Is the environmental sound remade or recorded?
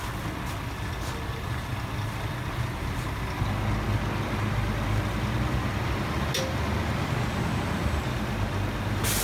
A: recorded